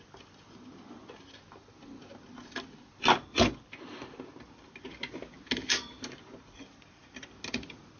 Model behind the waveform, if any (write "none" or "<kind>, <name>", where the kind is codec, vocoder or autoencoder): none